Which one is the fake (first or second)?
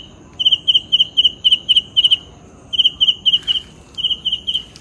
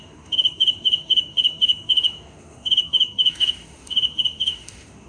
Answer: second